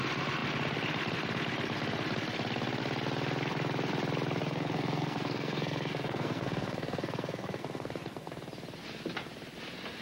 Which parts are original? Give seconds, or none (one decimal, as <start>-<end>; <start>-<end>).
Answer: 0.0-4.4; 8.3-10.0